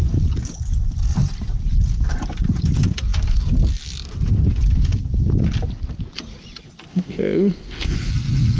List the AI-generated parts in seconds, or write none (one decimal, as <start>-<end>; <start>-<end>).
6.9-8.1